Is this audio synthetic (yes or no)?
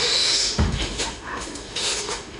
yes